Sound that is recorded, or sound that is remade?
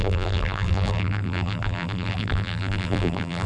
remade